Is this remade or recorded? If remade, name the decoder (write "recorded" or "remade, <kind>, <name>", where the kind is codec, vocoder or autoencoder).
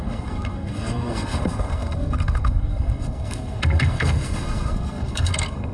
remade, codec, SNAC